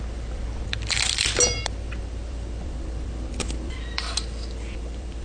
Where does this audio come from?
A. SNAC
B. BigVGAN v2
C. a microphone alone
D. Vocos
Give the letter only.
B